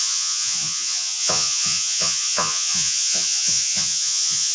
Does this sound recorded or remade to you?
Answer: remade